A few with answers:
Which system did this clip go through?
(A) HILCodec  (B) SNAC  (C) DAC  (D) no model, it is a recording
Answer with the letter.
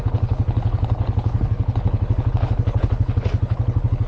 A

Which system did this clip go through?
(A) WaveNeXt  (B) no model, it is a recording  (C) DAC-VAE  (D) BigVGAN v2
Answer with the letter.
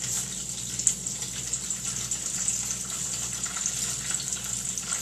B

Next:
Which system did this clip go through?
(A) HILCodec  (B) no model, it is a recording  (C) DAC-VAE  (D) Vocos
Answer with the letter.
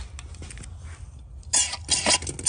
B